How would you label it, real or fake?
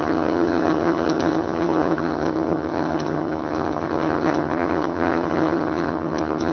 fake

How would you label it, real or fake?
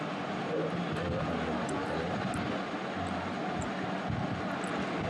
real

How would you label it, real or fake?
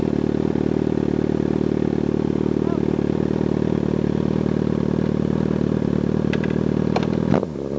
real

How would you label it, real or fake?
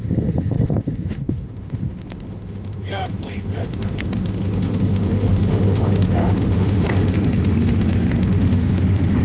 fake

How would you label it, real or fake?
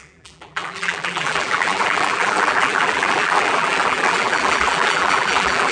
fake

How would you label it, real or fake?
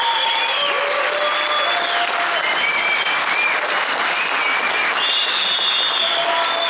real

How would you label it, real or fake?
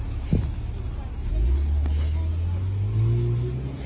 real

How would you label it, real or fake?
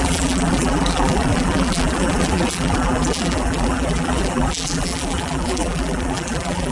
fake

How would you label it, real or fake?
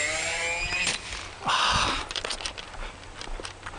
real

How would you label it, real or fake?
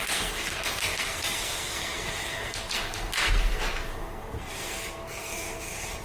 fake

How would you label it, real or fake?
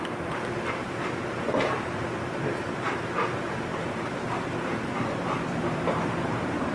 fake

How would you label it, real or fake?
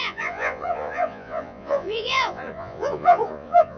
fake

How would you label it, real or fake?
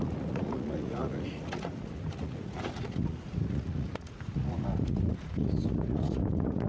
fake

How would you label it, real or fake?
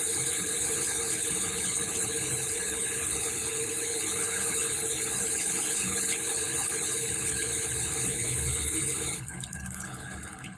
fake